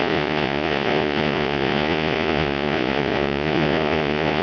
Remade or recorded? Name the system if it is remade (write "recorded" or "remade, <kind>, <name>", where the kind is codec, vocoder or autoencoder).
remade, vocoder, Vocos